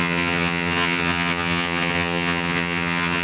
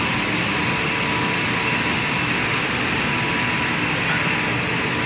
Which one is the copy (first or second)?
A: first